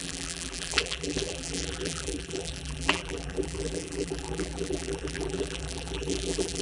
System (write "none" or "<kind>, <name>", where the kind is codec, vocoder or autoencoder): vocoder, BigVGAN v2